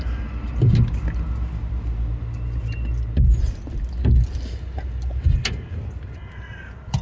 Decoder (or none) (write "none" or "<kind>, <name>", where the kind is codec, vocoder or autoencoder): none